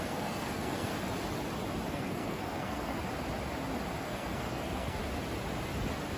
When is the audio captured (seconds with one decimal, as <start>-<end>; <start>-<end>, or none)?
0.9-1.9; 3.0-4.0; 5.0-6.2